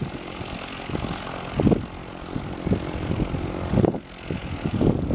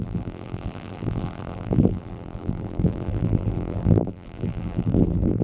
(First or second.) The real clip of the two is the first